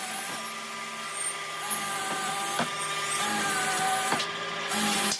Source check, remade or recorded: recorded